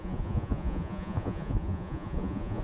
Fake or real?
fake